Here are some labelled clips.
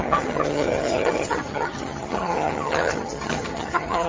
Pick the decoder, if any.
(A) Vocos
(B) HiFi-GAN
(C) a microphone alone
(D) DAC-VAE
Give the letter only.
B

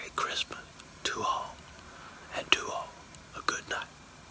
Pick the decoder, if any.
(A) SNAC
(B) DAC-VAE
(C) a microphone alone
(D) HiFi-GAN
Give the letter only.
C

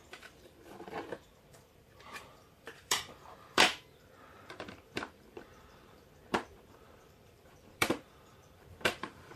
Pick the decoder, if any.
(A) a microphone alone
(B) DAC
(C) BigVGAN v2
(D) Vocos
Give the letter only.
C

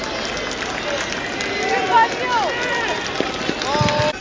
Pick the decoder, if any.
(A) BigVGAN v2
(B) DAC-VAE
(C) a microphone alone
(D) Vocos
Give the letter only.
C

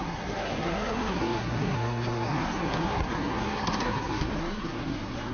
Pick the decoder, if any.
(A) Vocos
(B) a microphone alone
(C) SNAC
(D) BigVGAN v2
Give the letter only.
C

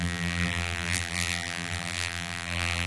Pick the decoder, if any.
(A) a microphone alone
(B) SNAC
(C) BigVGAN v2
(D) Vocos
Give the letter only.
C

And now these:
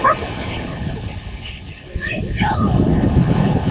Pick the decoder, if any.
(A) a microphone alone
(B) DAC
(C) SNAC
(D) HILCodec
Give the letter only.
D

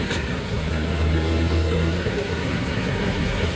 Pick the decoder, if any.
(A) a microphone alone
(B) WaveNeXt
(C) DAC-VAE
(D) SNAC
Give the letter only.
D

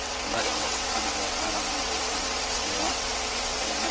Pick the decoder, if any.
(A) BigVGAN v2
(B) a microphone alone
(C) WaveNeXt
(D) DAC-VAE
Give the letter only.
C